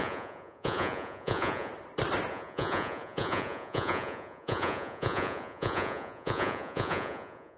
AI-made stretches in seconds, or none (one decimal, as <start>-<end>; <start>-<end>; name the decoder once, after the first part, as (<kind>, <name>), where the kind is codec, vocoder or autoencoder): 0.0-1.7 (vocoder, Vocos); 2.3-7.6